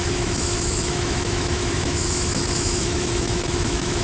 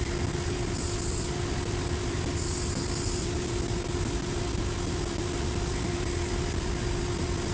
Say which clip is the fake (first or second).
first